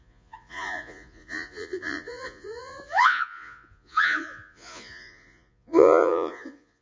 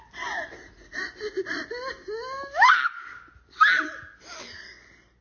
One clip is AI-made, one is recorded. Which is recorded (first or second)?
second